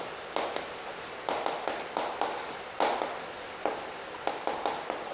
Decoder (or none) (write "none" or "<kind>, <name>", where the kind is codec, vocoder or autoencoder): none